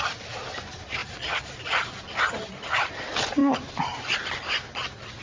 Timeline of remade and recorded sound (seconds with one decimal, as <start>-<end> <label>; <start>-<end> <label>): 0.0-1.0 remade; 1.0-1.5 recorded; 1.5-3.4 remade; 3.4-5.2 recorded